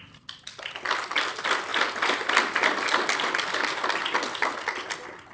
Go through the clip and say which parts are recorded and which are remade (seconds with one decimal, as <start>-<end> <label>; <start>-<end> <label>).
0.0-5.3 recorded